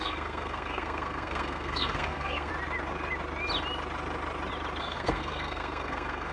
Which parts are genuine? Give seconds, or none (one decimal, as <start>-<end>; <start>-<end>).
2.5-4.8